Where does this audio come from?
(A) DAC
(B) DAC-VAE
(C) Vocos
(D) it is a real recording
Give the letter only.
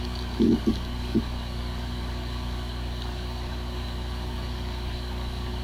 A